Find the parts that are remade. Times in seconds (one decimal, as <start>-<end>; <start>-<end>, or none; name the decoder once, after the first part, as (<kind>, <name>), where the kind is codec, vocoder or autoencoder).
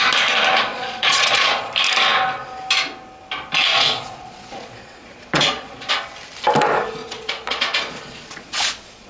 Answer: 0.7-1.7 (vocoder, Vocos); 3.7-5.9; 7.0-9.1